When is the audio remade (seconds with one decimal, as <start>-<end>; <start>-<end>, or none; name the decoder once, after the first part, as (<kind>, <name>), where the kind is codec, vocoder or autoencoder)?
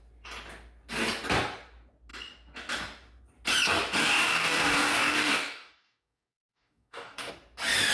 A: 4.0-7.3 (codec, DAC)